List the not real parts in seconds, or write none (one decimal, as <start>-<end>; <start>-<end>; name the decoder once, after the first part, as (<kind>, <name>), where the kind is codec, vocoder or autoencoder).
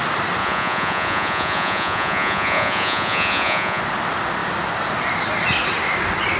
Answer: 0.4-3.8 (vocoder, Vocos)